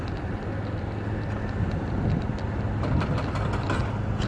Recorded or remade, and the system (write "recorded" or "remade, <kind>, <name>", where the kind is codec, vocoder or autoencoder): recorded